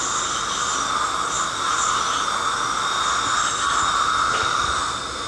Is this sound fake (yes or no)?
no